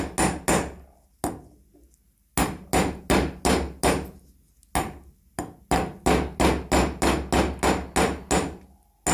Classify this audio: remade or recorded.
recorded